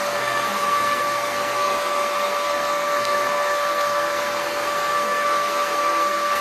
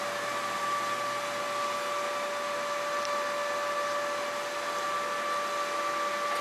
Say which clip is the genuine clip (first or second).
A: second